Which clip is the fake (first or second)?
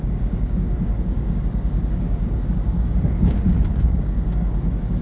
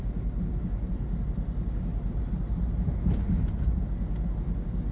first